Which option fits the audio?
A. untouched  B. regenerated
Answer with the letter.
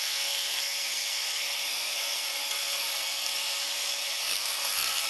B